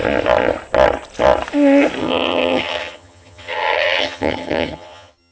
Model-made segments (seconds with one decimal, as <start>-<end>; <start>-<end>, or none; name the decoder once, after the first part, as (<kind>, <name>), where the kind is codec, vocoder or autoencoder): 2.0-5.3 (vocoder, HiFi-GAN)